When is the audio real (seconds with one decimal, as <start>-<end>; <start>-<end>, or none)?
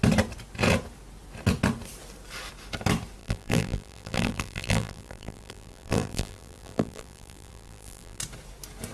0.0-3.2; 8.2-8.9